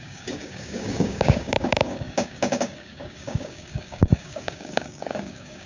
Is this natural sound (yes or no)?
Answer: no